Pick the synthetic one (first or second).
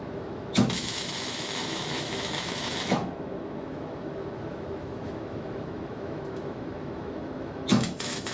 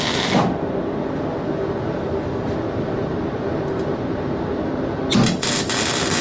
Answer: first